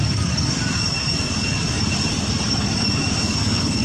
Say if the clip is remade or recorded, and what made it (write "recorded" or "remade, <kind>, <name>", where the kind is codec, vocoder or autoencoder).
remade, codec, DAC